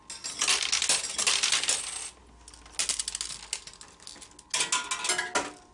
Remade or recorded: recorded